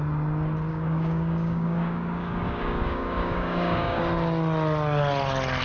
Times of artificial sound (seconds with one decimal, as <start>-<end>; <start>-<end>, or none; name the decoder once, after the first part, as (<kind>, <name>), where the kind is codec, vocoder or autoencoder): 0.7-4.0 (codec, DAC)